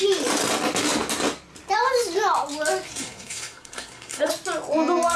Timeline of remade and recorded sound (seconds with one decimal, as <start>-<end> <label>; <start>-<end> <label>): 0.0-2.9 recorded; 2.9-4.3 remade; 4.3-5.2 recorded